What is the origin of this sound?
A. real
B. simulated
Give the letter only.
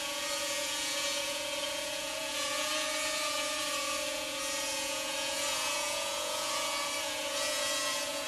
B